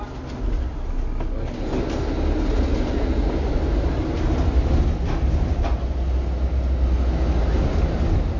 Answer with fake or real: real